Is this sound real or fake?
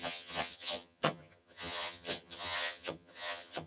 fake